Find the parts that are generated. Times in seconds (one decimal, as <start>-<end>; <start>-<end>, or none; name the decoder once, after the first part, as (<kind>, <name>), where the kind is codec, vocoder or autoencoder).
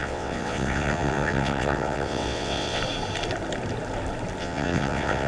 0.0-2.8 (vocoder, WaveNeXt); 4.4-5.3